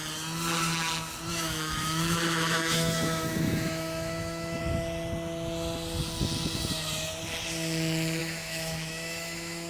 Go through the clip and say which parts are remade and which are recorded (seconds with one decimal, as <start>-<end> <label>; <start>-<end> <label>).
0.0-1.3 recorded; 1.3-4.6 remade; 4.6-8.2 recorded; 8.2-9.7 remade